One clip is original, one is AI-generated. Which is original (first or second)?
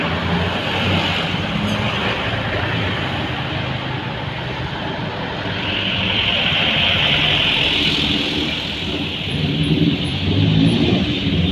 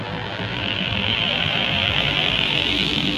first